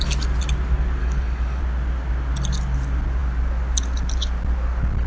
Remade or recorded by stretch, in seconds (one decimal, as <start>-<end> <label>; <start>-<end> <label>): 0.0-1.0 recorded; 1.0-1.6 remade; 1.6-5.1 recorded